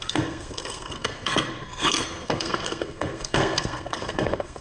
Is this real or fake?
fake